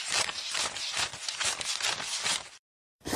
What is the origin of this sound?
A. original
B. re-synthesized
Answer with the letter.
B